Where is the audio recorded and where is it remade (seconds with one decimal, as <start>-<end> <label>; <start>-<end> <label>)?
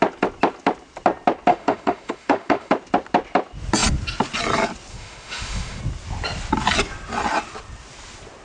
0.0-1.5 recorded; 1.5-2.7 remade; 2.7-4.9 recorded; 4.9-5.8 remade; 5.8-8.4 recorded